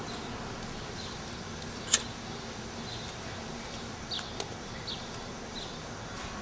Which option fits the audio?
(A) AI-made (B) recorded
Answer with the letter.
B